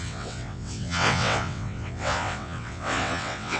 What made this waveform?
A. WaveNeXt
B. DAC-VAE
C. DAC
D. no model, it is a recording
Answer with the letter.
A